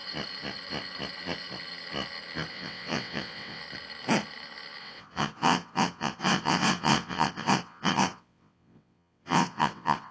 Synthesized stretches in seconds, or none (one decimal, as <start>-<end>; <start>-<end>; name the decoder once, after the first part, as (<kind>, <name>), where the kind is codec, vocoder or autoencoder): 2.5-3.6 (vocoder, WaveNeXt); 4.8-10.1